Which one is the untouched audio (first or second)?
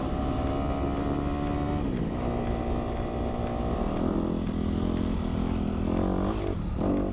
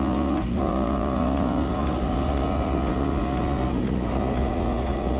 first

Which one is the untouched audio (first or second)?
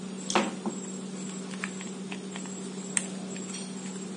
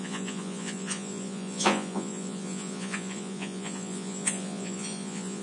first